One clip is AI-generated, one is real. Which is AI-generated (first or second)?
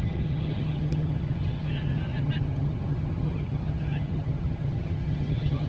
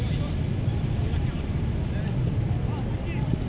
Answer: first